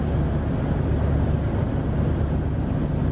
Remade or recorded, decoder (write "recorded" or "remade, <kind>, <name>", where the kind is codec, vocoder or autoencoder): recorded